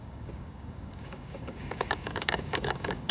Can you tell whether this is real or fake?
fake